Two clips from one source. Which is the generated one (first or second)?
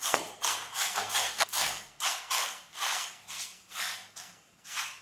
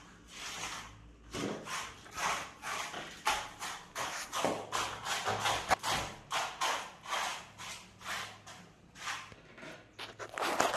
first